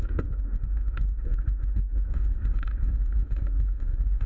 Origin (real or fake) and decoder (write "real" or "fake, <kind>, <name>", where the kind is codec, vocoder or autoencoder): fake, autoencoder, DAC-VAE